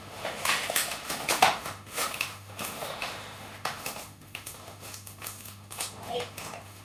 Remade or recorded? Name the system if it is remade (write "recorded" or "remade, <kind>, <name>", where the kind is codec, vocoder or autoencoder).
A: remade, autoencoder, DAC-VAE